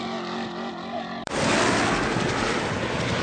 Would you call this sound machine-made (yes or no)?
no